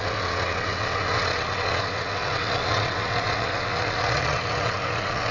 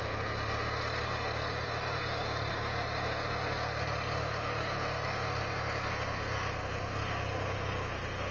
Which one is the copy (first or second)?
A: first